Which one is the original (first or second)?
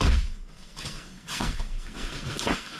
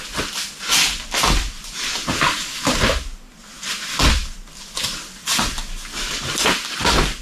second